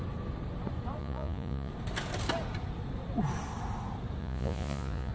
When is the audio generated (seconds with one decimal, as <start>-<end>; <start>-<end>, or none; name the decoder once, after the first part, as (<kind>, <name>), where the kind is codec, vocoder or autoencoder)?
1.0-1.7 (vocoder, Vocos); 4.2-5.1

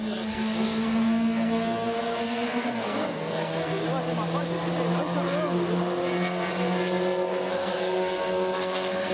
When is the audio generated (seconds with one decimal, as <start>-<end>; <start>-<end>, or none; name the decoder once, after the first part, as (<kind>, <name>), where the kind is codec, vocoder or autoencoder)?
0.0-3.8 (codec, SNAC); 7.3-9.1

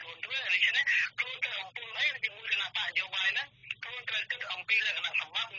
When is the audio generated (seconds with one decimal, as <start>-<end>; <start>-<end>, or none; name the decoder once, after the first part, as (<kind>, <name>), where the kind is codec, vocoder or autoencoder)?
none

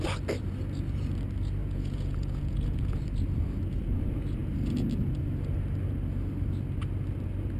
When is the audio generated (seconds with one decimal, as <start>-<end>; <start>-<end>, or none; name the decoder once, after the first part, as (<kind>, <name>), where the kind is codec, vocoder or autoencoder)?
1.6-3.0 (vocoder, Vocos)

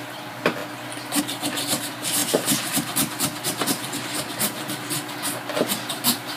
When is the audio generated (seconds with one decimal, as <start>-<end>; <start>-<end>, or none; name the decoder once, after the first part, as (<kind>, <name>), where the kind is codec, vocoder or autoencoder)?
0.0-0.6 (vocoder, BigVGAN v2); 1.2-2.2; 5.9-6.4

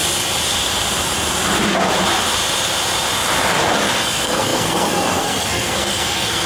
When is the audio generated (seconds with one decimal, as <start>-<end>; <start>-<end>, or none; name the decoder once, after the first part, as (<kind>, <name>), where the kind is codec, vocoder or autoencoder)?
3.9-6.5 (codec, SNAC)

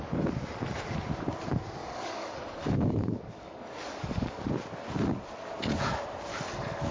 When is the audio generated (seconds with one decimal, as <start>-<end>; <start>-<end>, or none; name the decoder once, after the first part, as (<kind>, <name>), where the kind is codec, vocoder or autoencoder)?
1.8-4.5 (codec, DAC); 6.3-6.9

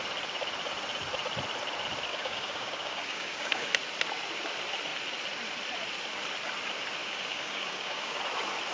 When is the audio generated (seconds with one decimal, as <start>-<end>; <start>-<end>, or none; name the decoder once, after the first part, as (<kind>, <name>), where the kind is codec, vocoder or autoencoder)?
2.1-3.7 (codec, DAC); 7.0-8.2